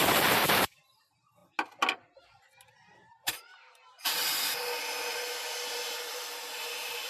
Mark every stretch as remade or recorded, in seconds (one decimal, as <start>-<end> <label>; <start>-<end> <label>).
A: 0.0-1.4 remade; 1.4-2.2 recorded; 2.2-4.2 remade; 4.2-5.7 recorded; 5.7-7.1 remade